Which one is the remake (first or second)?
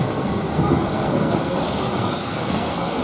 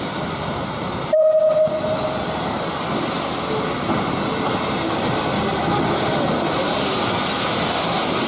first